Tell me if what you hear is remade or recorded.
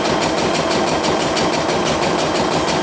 recorded